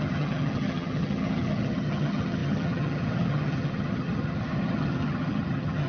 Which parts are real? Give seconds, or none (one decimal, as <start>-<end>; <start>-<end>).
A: none